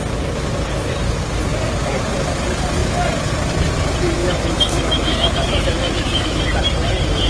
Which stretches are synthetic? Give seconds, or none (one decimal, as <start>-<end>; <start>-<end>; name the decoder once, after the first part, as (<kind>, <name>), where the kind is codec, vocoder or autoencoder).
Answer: 4.2-6.4 (autoencoder, DAC-VAE)